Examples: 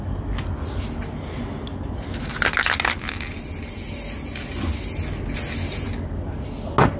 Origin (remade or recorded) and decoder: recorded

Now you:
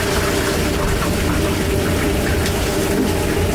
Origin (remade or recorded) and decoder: recorded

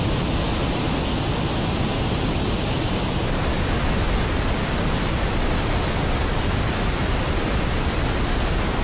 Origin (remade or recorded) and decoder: recorded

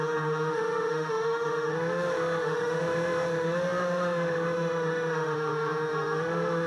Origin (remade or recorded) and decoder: remade, autoencoder, DAC-VAE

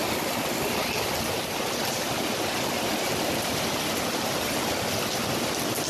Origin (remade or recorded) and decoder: recorded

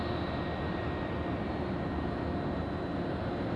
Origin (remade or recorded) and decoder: recorded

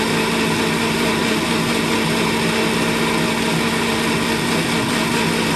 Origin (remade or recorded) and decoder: recorded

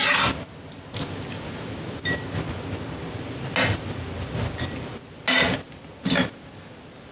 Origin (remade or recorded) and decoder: recorded